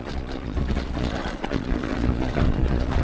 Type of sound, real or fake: fake